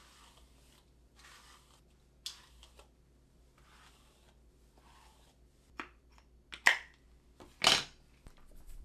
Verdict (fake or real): real